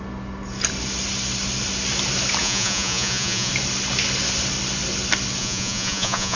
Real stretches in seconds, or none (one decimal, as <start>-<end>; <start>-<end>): 0.0-2.4; 3.5-5.4